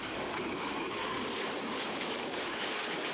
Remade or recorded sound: remade